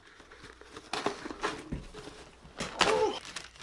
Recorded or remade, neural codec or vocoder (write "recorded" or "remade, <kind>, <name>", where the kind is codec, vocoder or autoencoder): recorded